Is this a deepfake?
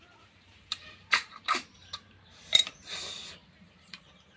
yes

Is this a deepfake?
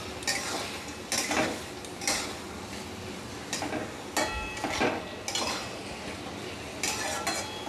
no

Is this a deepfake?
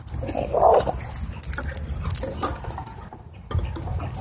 no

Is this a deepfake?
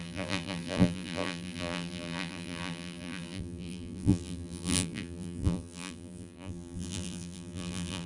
yes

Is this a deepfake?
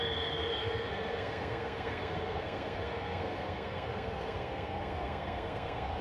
yes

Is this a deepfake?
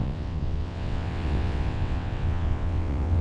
yes